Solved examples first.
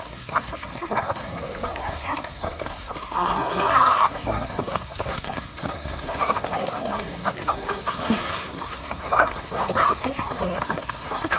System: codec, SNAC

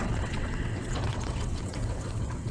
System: vocoder, WaveNeXt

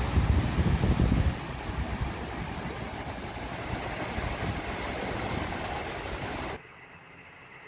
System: none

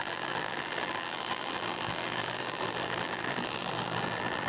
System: vocoder, BigVGAN v2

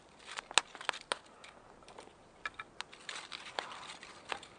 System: none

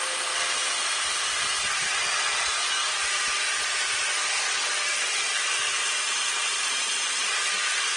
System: none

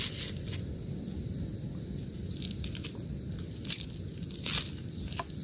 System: none